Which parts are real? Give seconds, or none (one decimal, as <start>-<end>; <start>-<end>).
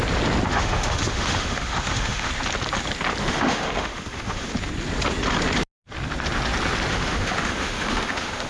0.0-0.5; 2.3-3.2; 4.5-6.9